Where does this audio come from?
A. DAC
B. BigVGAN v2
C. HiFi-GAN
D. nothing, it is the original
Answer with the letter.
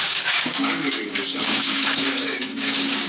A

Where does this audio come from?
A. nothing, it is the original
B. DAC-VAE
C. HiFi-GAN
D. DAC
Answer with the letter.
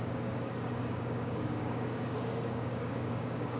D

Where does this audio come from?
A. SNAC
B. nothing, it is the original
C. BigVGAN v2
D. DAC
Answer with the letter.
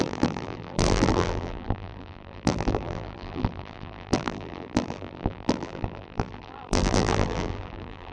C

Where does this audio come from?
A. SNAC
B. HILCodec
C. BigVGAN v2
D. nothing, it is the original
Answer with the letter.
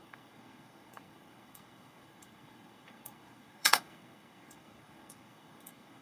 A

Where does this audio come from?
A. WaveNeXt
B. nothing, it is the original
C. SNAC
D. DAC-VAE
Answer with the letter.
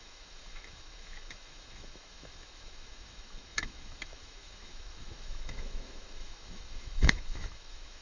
D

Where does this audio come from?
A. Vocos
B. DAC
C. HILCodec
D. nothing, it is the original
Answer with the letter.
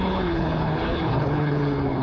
C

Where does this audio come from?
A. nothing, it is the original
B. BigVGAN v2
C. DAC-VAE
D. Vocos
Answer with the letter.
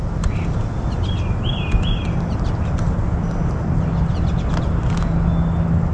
A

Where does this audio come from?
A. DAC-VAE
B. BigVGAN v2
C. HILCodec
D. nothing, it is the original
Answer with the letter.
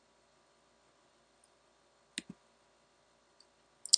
D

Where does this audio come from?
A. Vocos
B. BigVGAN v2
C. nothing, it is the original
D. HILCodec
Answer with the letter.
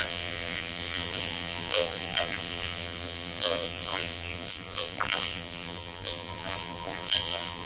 B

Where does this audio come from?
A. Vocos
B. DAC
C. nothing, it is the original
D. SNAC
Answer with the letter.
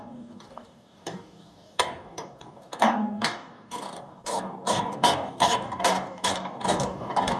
B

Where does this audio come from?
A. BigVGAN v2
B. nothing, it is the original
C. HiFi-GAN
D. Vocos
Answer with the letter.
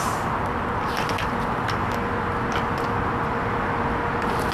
B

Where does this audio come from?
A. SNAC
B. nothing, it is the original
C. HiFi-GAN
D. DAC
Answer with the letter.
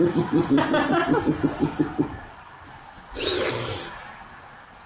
B